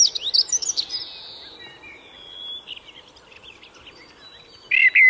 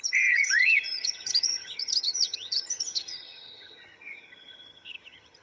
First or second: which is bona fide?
first